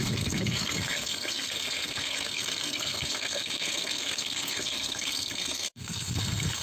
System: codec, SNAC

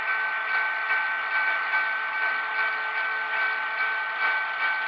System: none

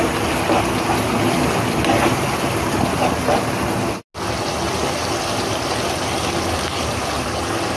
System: none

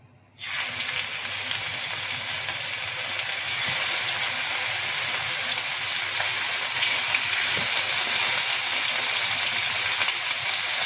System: none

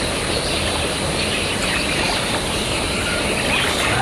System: none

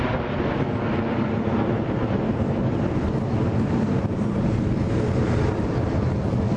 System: none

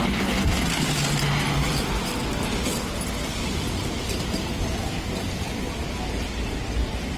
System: none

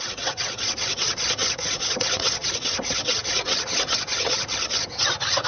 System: vocoder, WaveNeXt